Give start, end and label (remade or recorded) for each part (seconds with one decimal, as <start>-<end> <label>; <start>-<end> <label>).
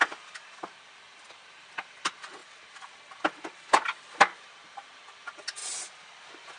0.0-6.6 recorded